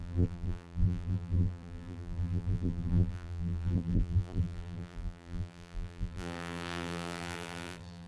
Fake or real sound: fake